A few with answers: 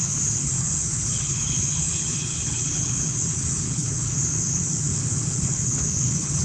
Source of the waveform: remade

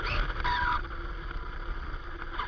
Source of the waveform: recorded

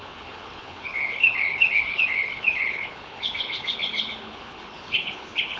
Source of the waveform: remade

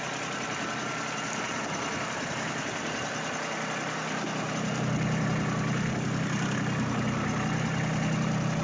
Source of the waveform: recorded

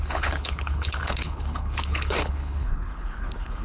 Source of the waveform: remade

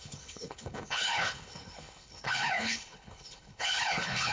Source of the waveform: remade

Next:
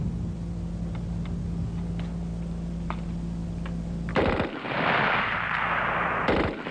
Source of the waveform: recorded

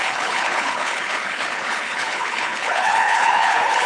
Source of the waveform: remade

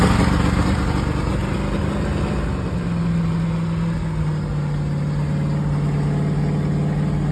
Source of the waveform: recorded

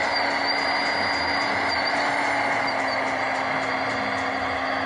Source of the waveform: recorded